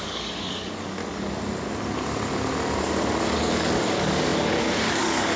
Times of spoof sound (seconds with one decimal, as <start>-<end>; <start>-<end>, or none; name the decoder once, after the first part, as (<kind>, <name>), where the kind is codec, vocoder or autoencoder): 0.0-1.0 (codec, DAC); 3.4-5.4